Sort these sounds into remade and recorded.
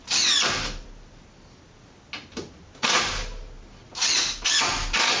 recorded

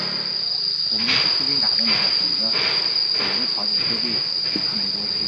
recorded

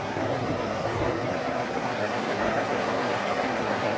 remade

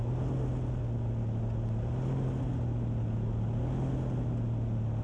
recorded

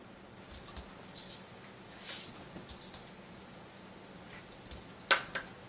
recorded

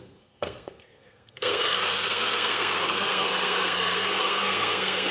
remade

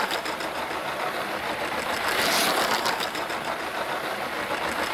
recorded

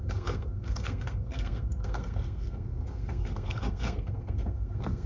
remade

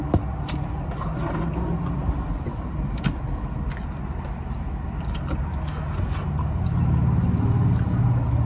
recorded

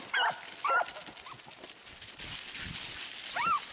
recorded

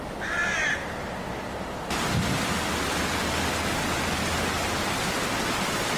recorded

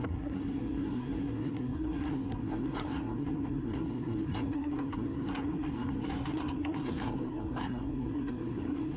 remade